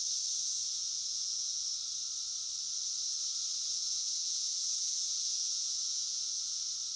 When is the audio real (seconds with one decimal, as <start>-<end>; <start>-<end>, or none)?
0.0-0.4; 1.6-3.7; 6.6-7.0